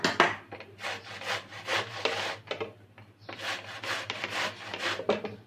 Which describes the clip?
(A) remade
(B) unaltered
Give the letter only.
B